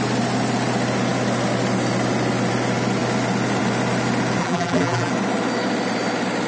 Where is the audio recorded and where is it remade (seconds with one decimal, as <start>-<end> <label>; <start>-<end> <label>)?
0.0-4.4 recorded; 4.4-5.1 remade; 5.1-6.5 recorded